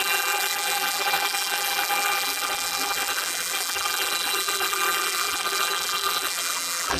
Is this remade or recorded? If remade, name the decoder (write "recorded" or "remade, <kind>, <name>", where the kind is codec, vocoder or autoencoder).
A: remade, vocoder, BigVGAN v2